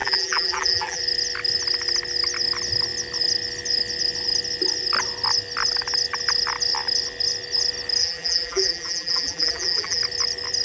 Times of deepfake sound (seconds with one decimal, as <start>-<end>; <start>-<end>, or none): 0.0-1.0; 8.0-10.0